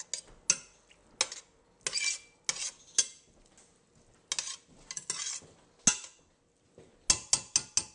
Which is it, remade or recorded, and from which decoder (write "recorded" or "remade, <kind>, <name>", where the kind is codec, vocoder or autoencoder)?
recorded